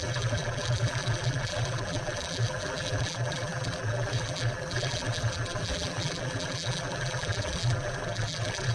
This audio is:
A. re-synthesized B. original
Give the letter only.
A